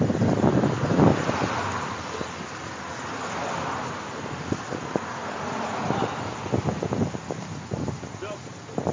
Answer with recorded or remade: recorded